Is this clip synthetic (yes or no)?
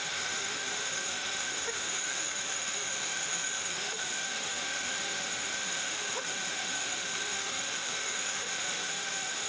yes